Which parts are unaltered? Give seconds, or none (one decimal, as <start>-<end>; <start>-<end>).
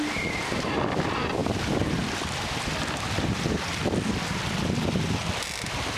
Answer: 0.0-6.0